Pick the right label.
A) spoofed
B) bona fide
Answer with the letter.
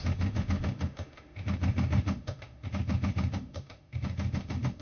A